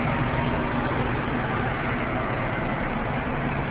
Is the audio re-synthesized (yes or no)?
no